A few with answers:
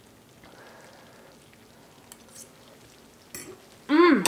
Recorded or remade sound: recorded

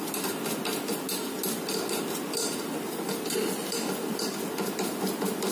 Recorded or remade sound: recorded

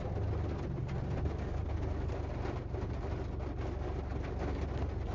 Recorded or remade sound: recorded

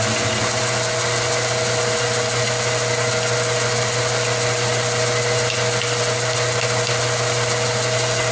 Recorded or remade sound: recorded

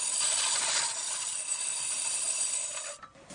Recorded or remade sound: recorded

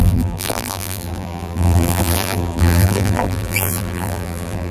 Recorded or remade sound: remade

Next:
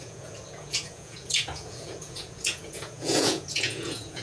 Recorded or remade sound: remade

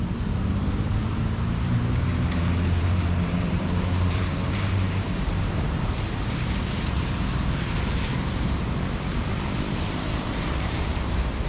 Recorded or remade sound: remade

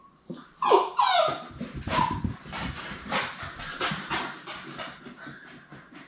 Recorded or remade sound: remade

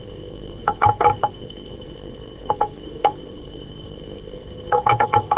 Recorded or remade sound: remade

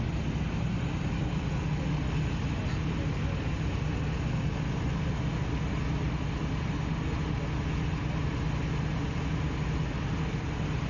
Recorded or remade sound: recorded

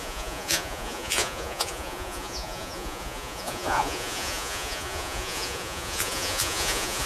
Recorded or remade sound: remade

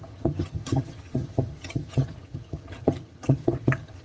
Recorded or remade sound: remade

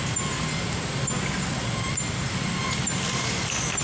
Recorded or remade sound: recorded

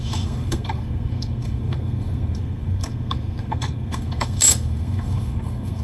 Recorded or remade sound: remade